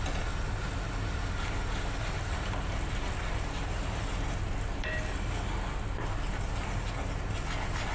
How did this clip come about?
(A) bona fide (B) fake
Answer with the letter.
A